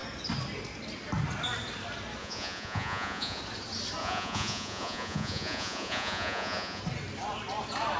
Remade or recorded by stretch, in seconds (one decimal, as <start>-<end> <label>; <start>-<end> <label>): 0.0-2.2 recorded; 2.2-3.4 remade; 3.4-4.0 recorded; 4.0-6.8 remade; 6.8-8.0 recorded

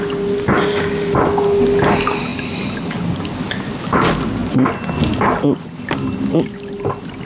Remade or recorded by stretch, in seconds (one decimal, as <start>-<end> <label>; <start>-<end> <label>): 0.0-7.3 recorded